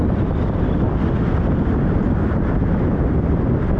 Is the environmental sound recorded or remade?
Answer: recorded